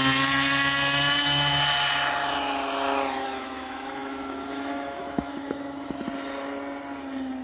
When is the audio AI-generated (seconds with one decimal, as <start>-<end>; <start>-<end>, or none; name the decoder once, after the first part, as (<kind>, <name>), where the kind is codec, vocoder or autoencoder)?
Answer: 3.2-5.9 (autoencoder, DAC-VAE)